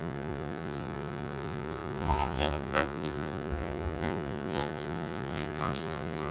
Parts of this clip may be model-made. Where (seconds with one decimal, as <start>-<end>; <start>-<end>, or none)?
0.0-6.3